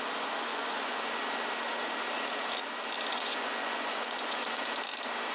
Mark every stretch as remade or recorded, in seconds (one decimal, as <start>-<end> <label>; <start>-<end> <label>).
0.0-0.5 recorded; 0.5-1.0 remade; 1.0-3.1 recorded; 3.1-4.6 remade; 4.6-5.3 recorded